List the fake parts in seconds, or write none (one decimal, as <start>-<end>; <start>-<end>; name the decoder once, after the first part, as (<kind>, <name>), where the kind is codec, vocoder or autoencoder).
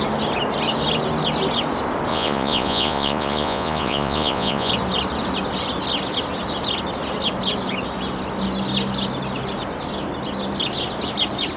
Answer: 2.1-4.7 (vocoder, Vocos)